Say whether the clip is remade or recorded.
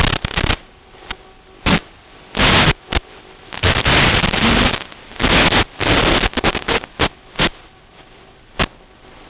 recorded